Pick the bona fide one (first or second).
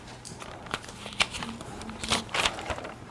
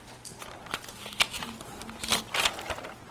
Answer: second